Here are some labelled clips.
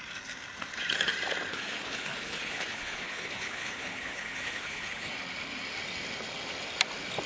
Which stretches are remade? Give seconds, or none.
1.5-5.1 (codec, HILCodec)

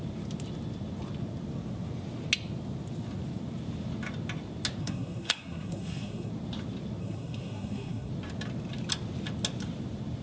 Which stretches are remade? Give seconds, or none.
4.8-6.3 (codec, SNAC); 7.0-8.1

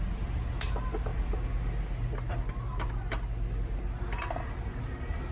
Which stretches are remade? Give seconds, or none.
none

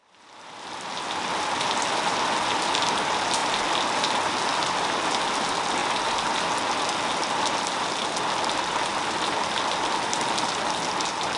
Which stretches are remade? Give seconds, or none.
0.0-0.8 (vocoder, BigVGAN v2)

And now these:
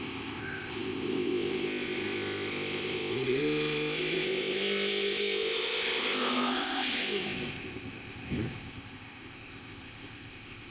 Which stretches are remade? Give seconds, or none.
0.0-10.7 (codec, ZipCodec)

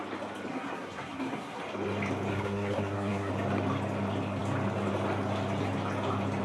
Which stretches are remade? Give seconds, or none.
0.5-1.6 (codec, SNAC); 2.3-3.3